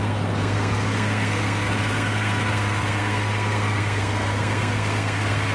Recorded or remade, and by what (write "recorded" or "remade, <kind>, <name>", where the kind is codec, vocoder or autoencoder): remade, codec, SNAC